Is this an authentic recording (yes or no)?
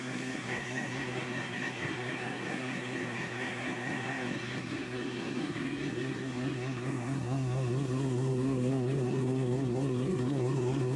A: no